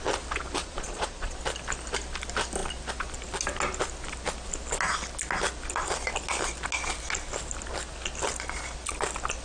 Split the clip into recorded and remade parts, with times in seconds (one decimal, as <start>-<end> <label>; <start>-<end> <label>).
0.0-0.6 recorded; 0.6-1.4 remade; 1.4-9.4 recorded